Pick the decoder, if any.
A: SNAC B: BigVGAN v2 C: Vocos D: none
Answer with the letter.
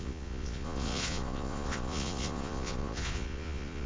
C